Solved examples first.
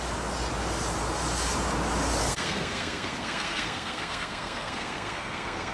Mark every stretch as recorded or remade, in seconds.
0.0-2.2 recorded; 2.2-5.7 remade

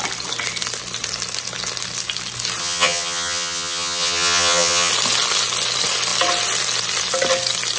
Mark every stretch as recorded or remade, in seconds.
0.0-2.6 recorded; 2.6-4.9 remade; 4.9-7.8 recorded

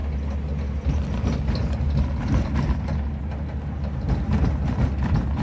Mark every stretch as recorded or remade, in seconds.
0.0-5.4 recorded

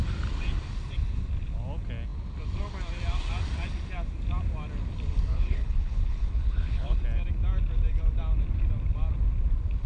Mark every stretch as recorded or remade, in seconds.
0.0-5.3 recorded; 5.3-7.0 remade; 7.0-9.9 recorded

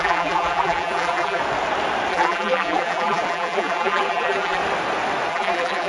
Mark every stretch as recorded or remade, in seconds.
0.0-1.4 remade; 1.4-2.1 recorded; 2.1-4.6 remade; 4.6-5.3 recorded; 5.3-5.9 remade

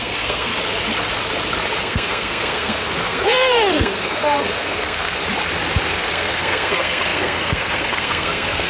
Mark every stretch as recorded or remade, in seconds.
0.0-0.5 remade; 0.5-1.8 recorded; 1.8-5.2 remade; 5.2-5.9 recorded; 5.9-8.7 remade